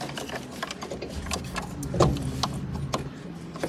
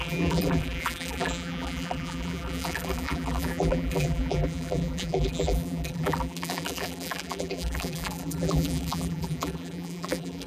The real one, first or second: first